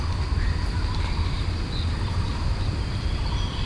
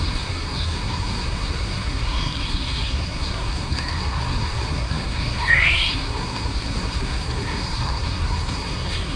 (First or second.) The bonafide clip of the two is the first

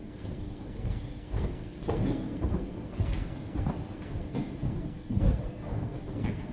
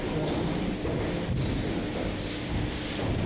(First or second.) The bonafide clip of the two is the second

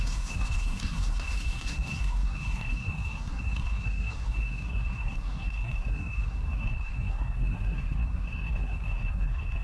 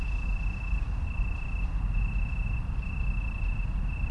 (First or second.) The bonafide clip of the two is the second